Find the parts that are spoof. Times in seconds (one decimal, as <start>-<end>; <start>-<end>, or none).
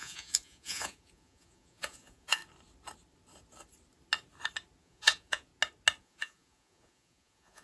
0.0-2.4; 4.8-5.5; 6.0-7.6